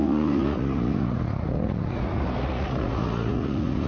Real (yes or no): no